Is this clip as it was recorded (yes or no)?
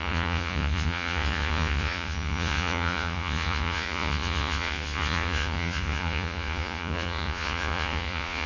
no